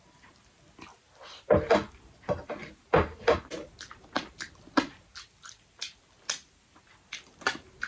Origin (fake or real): real